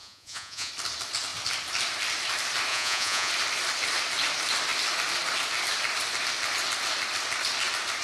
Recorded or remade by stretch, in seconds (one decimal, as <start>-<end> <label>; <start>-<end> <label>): 0.0-0.7 remade; 0.7-2.7 recorded; 2.7-3.3 remade; 3.3-8.0 recorded